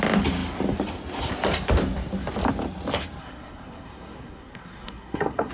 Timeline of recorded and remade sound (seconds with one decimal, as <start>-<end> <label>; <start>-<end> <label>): 0.0-3.2 recorded; 3.2-5.5 remade